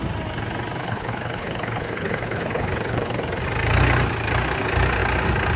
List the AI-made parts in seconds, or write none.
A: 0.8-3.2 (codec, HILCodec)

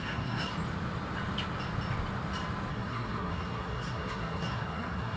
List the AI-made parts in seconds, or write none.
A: 0.0-0.5 (codec, SNAC); 2.7-5.2

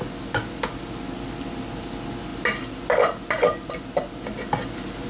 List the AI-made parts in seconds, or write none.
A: none